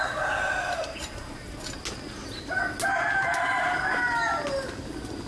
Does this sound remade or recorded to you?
recorded